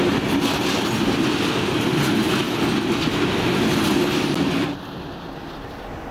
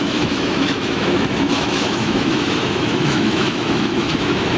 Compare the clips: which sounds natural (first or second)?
first